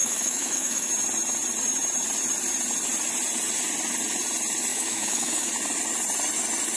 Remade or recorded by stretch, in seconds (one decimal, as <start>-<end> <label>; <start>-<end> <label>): 0.0-0.9 remade; 0.9-4.7 recorded; 4.7-5.5 remade; 5.5-6.8 recorded